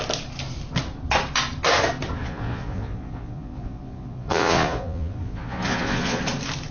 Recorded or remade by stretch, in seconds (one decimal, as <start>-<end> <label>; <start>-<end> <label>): 0.0-2.2 recorded; 2.2-6.2 remade; 6.2-6.7 recorded